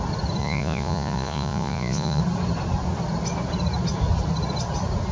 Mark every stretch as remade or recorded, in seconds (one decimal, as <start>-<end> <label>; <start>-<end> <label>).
0.0-0.4 recorded; 0.4-2.2 remade; 2.2-5.1 recorded